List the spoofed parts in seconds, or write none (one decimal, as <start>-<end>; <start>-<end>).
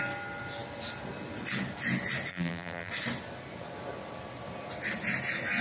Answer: 2.3-2.9